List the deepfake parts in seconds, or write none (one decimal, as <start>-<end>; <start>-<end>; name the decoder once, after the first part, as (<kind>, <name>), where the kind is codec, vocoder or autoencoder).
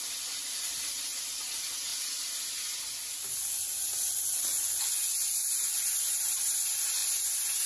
none